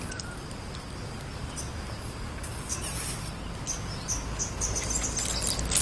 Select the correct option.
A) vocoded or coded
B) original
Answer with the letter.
B